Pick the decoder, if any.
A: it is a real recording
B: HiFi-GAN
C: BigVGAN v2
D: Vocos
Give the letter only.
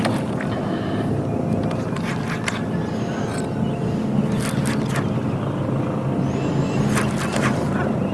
A